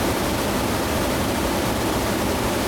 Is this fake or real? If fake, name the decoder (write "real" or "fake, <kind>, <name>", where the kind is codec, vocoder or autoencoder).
real